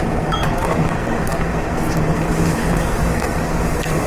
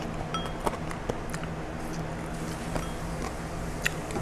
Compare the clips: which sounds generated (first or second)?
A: first